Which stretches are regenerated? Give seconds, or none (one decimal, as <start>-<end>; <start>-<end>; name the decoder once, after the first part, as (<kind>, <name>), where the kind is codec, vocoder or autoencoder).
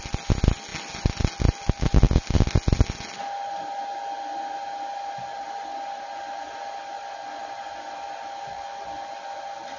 none